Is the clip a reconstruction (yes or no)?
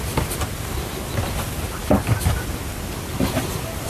no